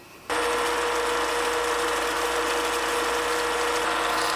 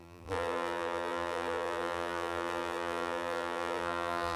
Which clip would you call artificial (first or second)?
second